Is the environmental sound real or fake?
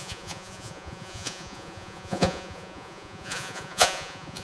fake